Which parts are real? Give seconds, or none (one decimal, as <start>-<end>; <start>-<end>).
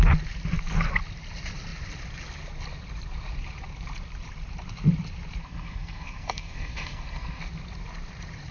0.0-5.4; 7.4-8.5